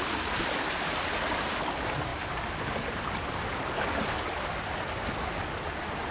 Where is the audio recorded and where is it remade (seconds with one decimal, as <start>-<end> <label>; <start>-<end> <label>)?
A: 0.0-6.1 recorded